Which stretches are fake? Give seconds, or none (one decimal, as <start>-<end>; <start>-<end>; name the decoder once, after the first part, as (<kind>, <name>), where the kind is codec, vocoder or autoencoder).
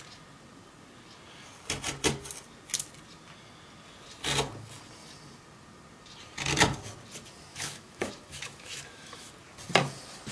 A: 7.5-9.3 (autoencoder, DAC-VAE)